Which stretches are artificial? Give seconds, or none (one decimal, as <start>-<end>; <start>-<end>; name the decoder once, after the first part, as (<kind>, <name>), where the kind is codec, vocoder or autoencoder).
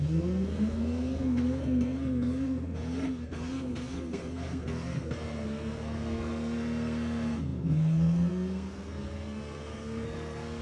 0.0-10.6 (codec, SNAC)